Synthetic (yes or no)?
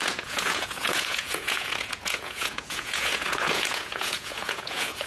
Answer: yes